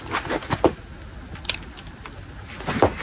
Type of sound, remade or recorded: recorded